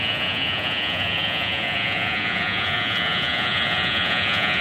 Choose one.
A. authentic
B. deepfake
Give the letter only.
B